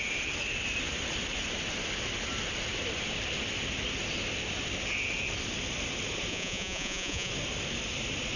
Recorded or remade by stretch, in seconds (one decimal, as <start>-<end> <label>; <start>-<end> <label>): 0.0-6.3 recorded; 6.3-7.3 remade; 7.3-8.4 recorded